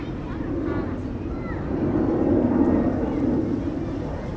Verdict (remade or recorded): recorded